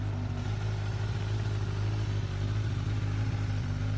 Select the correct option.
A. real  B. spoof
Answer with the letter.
A